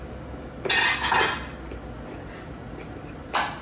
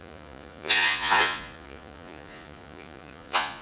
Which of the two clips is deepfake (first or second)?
second